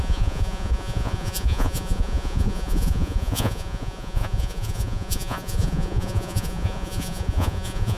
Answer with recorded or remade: remade